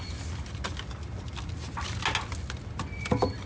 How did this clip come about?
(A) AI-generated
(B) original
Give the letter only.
B